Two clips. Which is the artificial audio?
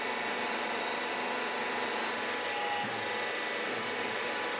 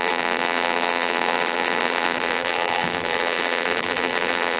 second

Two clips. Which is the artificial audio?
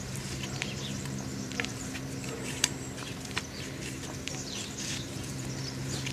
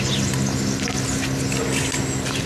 first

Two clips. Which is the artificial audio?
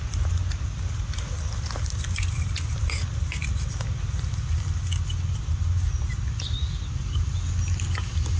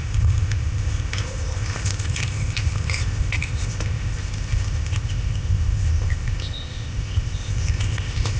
second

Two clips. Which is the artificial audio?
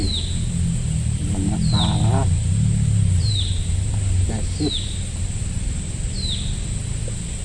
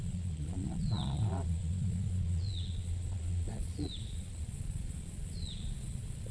second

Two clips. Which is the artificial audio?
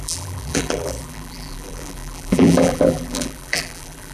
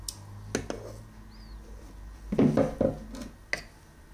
first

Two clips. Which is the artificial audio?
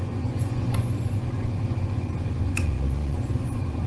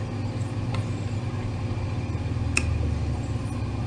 first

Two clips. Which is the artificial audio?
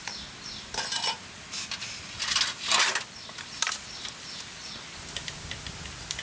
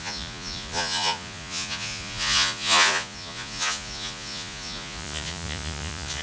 second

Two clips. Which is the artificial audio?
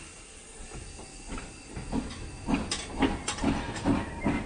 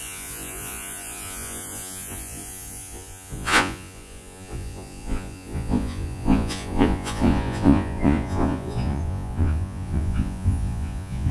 second